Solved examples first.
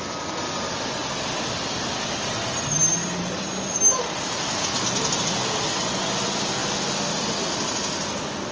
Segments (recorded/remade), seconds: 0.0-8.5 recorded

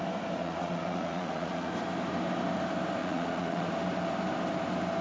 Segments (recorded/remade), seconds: 0.0-0.4 recorded; 0.4-1.7 remade; 1.7-3.0 recorded; 3.0-3.7 remade; 3.7-5.0 recorded